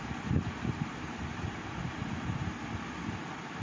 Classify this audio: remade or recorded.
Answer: remade